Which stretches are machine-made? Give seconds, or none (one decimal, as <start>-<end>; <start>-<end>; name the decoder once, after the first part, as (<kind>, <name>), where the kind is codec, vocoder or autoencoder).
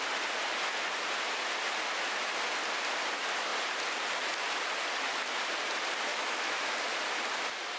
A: 6.1-6.6 (autoencoder, DAC-VAE)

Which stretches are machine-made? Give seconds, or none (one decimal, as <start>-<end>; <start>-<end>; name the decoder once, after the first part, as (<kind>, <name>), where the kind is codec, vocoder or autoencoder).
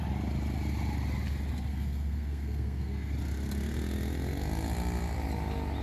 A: 1.7-3.1 (codec, SNAC)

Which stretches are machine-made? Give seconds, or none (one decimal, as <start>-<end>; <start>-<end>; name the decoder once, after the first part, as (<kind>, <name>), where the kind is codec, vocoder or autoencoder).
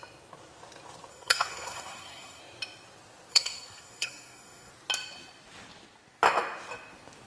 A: 1.1-2.4 (codec, SNAC); 3.3-4.7